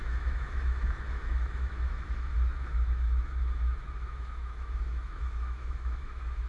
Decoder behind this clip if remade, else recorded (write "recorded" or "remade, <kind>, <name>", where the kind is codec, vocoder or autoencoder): remade, autoencoder, DAC-VAE